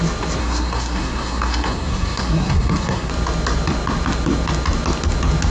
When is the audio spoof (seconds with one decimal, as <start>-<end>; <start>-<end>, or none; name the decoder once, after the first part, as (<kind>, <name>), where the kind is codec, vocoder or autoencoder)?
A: 0.4-3.1 (codec, SNAC)